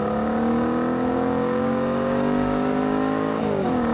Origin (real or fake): fake